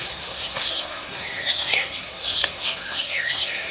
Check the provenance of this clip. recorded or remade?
remade